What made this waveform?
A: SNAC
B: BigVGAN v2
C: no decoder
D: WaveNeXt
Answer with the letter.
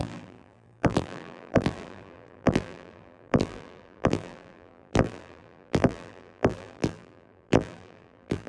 B